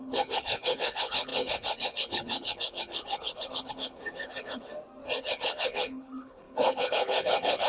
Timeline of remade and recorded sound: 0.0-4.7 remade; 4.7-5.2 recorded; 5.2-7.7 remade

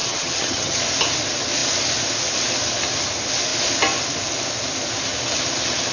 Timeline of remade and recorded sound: 0.0-0.8 remade; 0.8-5.9 recorded

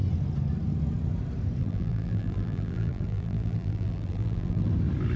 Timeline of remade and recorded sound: 0.0-1.6 recorded; 1.6-4.7 remade; 4.7-5.2 recorded

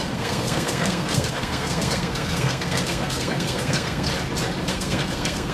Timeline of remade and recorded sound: 0.0-4.1 remade; 4.1-4.7 recorded; 4.7-5.5 remade

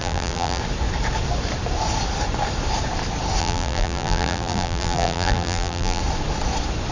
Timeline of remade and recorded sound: 0.0-0.6 remade; 0.6-3.4 recorded; 3.4-6.0 remade; 6.0-6.9 recorded

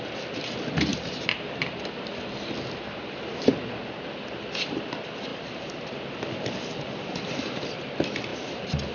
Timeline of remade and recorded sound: 0.0-0.9 recorded; 0.9-2.0 remade; 2.0-5.3 recorded; 5.3-5.9 remade; 5.9-8.3 recorded; 8.3-8.9 remade

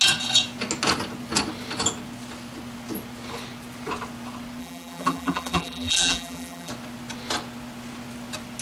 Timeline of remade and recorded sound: 0.0-4.6 recorded; 4.6-6.7 remade; 6.7-8.6 recorded